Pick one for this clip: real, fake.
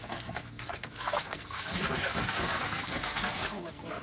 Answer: fake